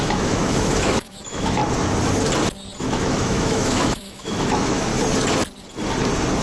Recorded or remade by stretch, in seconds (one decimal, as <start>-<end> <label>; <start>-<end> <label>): 0.0-1.6 remade; 1.6-2.8 recorded; 2.8-4.9 remade; 4.9-6.4 recorded